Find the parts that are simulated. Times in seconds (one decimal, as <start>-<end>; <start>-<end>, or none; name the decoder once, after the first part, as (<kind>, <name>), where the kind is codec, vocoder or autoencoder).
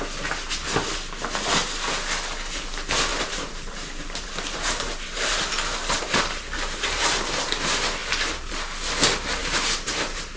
3.1-7.5 (vocoder, BigVGAN v2); 9.4-10.4